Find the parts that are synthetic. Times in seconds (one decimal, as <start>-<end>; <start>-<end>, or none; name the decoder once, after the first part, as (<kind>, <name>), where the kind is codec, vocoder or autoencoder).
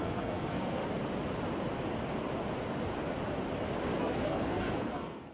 0.0-0.8 (codec, SNAC); 4.0-5.3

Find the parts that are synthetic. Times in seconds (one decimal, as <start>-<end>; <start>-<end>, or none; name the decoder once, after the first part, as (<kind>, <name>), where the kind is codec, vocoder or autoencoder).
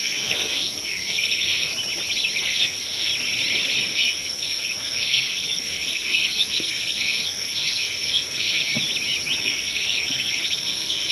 0.0-1.7 (codec, SNAC); 2.4-3.1; 3.8-8.7; 9.4-11.1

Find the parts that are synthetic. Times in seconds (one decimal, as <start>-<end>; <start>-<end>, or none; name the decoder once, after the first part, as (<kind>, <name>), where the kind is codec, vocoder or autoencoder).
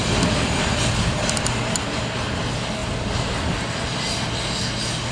none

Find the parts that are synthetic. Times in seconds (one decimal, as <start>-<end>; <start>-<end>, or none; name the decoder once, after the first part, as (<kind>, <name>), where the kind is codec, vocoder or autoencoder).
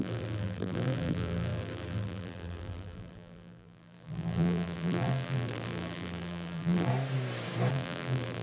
0.0-6.9 (vocoder, BigVGAN v2); 7.7-8.4